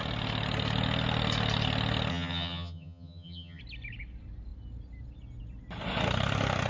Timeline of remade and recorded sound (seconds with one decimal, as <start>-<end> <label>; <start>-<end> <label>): 0.0-2.1 recorded; 2.1-3.6 remade; 3.6-6.7 recorded